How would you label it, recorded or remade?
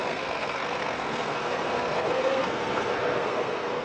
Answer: remade